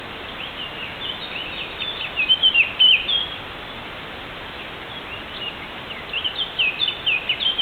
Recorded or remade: recorded